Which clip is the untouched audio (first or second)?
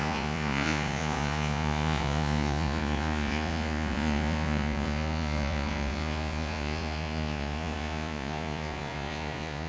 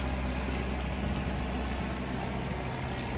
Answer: second